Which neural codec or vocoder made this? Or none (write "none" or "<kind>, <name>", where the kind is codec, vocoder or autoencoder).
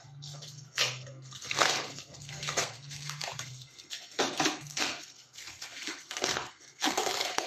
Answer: codec, SNAC